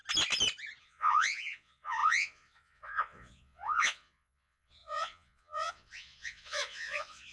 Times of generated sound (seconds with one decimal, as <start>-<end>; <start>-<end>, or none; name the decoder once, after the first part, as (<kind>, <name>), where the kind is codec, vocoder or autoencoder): 0.8-7.3 (vocoder, Vocos)